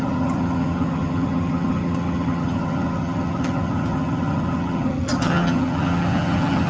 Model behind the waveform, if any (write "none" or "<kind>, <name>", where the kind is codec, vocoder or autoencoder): vocoder, HiFi-GAN